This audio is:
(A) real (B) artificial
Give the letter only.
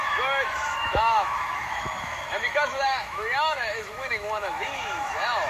B